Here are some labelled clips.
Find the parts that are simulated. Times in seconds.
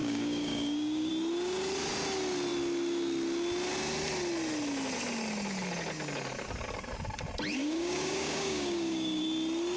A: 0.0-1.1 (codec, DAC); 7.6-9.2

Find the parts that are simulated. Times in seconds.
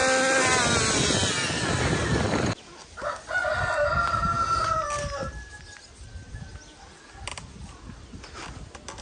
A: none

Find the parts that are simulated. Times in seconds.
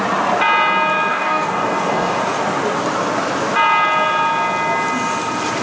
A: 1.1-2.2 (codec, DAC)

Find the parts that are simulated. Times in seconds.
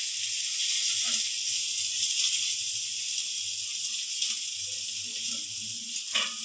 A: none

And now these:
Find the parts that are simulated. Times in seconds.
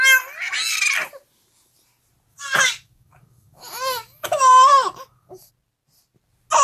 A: 2.3-5.5 (codec, DAC)